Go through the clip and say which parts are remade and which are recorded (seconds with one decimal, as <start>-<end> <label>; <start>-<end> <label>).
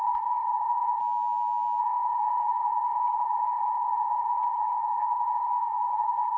0.0-1.0 remade; 1.0-1.8 recorded; 1.8-6.4 remade